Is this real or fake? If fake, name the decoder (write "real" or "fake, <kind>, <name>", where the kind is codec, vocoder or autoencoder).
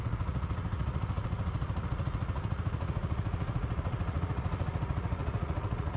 fake, vocoder, Vocos